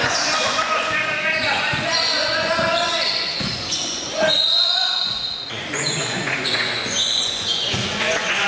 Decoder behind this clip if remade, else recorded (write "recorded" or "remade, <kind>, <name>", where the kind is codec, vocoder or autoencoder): remade, vocoder, Vocos